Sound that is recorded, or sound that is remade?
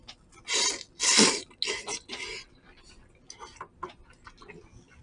recorded